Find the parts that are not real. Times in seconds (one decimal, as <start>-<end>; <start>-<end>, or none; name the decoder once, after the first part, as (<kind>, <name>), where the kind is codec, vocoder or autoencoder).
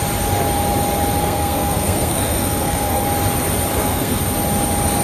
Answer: 1.2-3.0 (codec, SNAC); 3.7-4.2